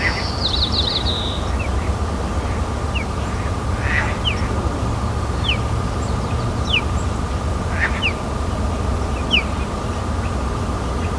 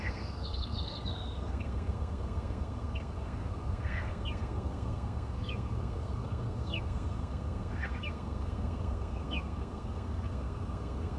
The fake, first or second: second